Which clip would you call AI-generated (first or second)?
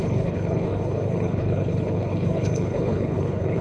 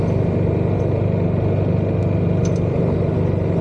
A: first